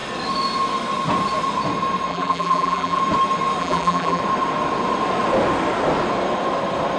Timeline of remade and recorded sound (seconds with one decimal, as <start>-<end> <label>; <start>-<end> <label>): 0.0-2.1 recorded; 2.1-3.0 remade; 3.0-3.6 recorded; 3.6-4.2 remade; 4.2-7.0 recorded